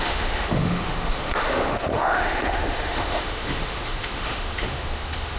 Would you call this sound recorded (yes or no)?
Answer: no